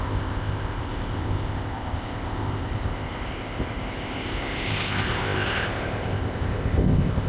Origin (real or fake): fake